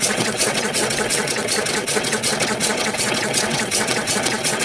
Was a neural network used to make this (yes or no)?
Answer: yes